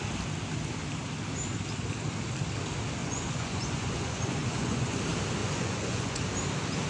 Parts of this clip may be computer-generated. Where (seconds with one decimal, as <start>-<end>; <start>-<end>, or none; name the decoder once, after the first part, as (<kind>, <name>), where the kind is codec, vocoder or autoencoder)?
3.0-5.0 (vocoder, Vocos); 5.4-6.2